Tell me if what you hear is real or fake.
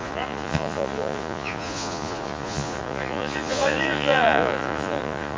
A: fake